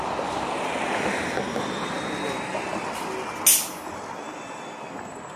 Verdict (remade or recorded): recorded